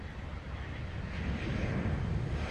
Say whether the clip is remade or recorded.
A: recorded